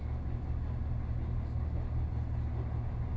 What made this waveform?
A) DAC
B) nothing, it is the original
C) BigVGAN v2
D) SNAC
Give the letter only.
B